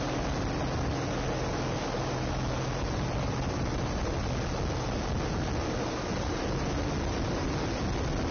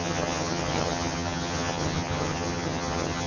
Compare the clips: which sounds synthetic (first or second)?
second